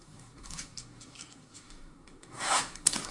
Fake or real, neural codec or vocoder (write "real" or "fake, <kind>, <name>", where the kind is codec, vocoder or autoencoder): fake, codec, SNAC